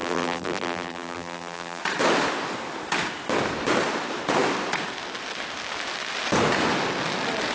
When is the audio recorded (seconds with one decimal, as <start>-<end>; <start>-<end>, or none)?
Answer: 1.8-7.5